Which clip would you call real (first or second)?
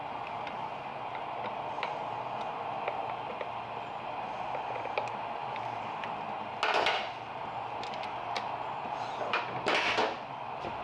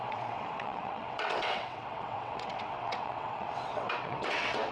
first